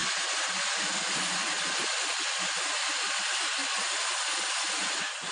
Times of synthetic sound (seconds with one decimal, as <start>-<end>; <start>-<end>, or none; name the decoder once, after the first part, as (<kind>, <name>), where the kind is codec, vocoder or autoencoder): none